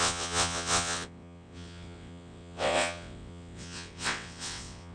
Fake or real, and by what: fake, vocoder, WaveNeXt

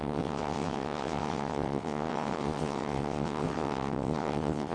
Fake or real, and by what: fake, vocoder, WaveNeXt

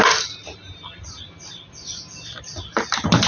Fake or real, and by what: real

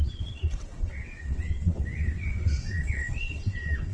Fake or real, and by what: fake, vocoder, WaveNeXt